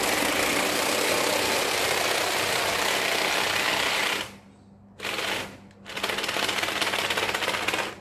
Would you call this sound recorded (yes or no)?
yes